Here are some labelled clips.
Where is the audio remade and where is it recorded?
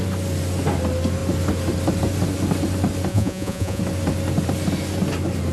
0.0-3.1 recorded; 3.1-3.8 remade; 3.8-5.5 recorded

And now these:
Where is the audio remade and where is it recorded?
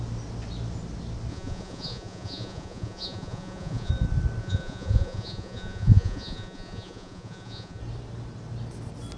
0.0-1.3 recorded; 1.3-3.9 remade; 3.9-4.4 recorded; 4.4-7.8 remade; 7.8-9.2 recorded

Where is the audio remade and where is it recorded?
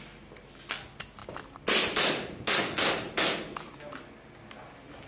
0.0-5.1 recorded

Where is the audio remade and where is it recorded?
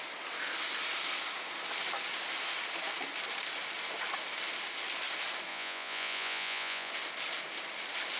0.0-5.5 recorded; 5.5-6.9 remade; 6.9-8.2 recorded